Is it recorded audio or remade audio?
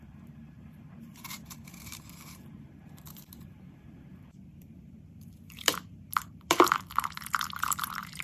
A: remade